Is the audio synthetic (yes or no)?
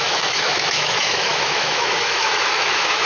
yes